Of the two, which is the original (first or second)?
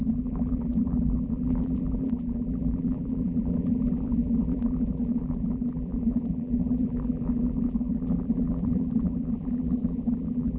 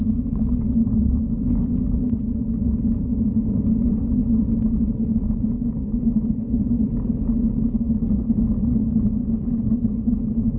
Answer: second